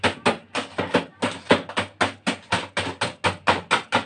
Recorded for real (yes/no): yes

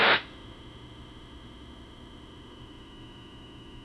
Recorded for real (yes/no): no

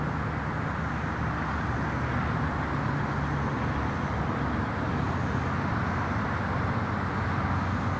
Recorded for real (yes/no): yes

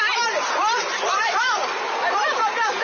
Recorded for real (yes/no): yes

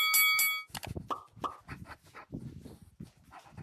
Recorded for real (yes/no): yes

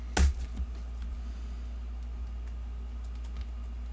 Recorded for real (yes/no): yes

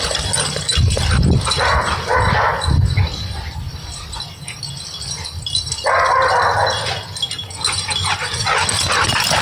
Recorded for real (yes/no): yes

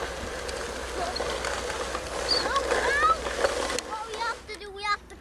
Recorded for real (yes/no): yes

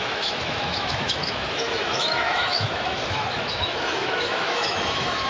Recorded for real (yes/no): no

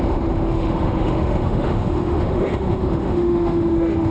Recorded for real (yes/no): no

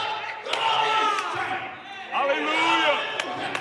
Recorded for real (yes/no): yes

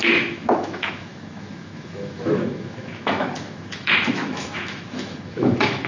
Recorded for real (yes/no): no